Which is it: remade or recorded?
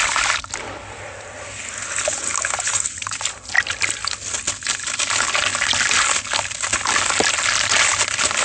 recorded